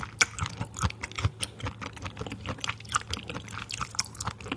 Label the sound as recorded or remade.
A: recorded